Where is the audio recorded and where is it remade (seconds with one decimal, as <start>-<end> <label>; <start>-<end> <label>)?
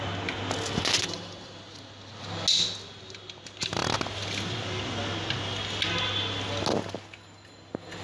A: 0.0-8.0 recorded